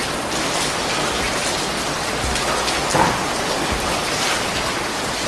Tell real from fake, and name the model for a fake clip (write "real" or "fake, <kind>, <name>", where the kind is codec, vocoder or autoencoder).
real